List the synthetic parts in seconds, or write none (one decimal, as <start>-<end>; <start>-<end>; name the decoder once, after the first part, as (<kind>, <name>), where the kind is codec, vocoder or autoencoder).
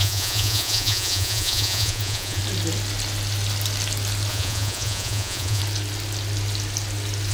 0.0-2.4 (vocoder, Vocos); 4.3-5.6